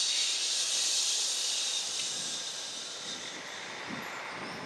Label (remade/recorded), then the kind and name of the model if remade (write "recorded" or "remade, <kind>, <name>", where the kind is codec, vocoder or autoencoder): recorded